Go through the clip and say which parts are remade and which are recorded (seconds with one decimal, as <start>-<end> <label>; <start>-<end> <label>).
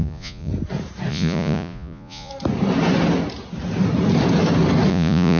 0.0-0.5 remade; 0.5-1.1 recorded; 1.1-2.3 remade; 2.3-4.9 recorded; 4.9-5.4 remade